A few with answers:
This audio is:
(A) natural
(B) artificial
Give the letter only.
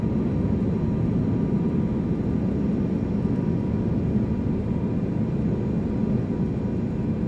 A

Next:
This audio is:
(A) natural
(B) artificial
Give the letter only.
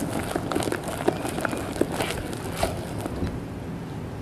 A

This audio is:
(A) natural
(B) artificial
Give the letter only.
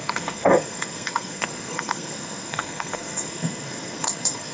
B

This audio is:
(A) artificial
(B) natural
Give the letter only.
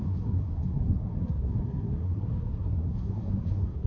A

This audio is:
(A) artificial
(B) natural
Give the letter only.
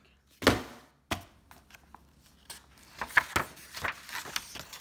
B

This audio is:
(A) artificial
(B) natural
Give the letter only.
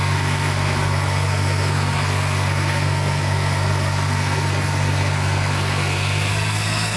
A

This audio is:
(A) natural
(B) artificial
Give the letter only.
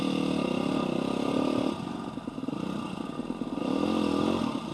A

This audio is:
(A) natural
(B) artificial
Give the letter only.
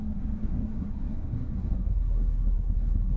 B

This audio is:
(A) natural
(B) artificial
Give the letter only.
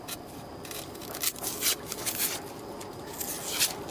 A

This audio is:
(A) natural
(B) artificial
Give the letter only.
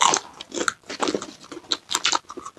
A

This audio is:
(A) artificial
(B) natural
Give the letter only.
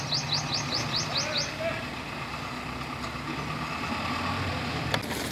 B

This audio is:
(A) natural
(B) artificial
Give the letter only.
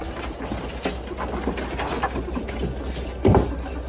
A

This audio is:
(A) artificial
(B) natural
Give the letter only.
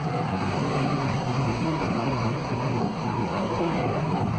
A